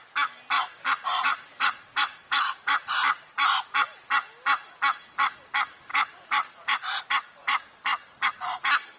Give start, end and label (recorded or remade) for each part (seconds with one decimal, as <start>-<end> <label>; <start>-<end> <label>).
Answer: 0.0-1.1 recorded; 1.1-2.9 remade; 2.9-5.9 recorded; 5.9-7.7 remade; 7.7-9.0 recorded